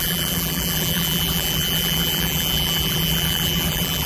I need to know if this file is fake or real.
fake